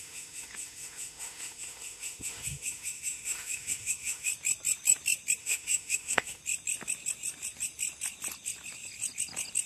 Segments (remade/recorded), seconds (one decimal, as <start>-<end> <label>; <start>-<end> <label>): 0.0-4.3 remade; 4.3-5.4 recorded; 5.4-6.4 remade; 6.4-9.7 recorded